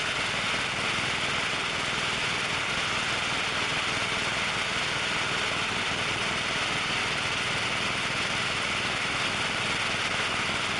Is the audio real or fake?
real